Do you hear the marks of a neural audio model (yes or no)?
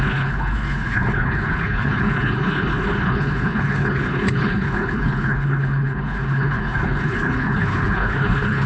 yes